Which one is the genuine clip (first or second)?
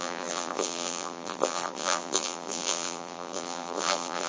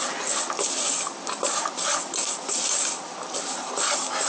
second